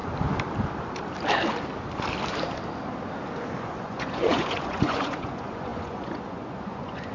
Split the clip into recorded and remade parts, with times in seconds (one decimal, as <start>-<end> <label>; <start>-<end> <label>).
0.0-3.6 recorded; 3.6-7.1 remade

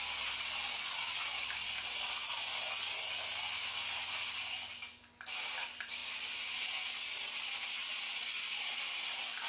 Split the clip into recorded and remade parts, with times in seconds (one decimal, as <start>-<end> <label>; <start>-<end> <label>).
0.0-9.5 recorded

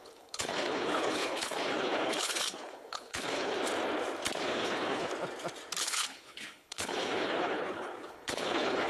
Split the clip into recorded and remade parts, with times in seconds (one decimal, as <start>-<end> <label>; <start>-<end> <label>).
0.0-3.6 remade; 3.6-4.4 recorded; 4.4-5.1 remade; 5.1-5.8 recorded; 5.8-8.9 remade

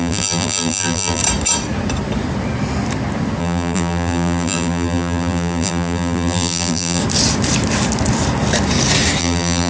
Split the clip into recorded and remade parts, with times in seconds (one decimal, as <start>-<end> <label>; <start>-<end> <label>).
0.0-1.2 remade; 1.2-3.4 recorded; 3.4-7.0 remade; 7.0-9.2 recorded; 9.2-9.7 remade

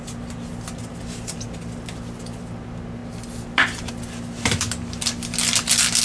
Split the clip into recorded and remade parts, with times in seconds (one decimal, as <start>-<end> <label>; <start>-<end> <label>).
0.0-6.0 recorded

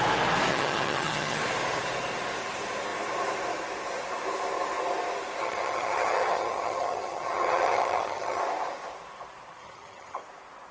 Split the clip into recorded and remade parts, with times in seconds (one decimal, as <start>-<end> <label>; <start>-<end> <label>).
0.0-0.5 recorded; 0.5-1.4 remade; 1.4-5.4 recorded; 5.4-8.4 remade; 8.4-9.6 recorded; 9.6-10.2 remade; 10.2-10.7 recorded

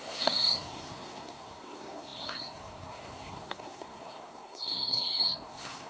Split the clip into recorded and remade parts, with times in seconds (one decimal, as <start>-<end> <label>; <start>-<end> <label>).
0.0-5.9 remade